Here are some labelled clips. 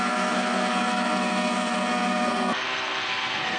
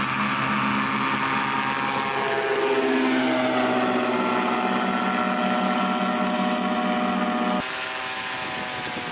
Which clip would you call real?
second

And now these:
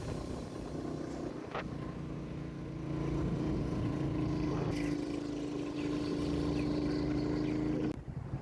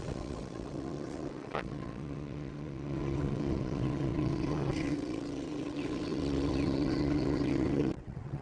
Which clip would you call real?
first